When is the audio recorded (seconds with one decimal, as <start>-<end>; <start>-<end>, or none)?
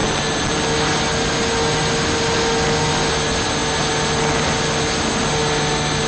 0.0-6.1